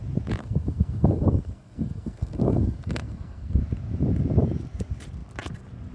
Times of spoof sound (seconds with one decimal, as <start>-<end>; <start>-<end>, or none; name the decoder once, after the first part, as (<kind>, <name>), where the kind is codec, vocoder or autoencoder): 0.4-3.6 (codec, SNAC)